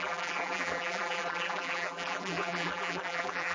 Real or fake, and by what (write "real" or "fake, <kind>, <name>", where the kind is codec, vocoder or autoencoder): fake, vocoder, BigVGAN v2